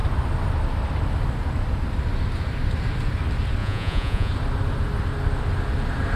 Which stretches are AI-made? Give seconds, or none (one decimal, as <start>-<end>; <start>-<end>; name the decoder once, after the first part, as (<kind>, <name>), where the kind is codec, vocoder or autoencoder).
3.6-4.3 (vocoder, Vocos)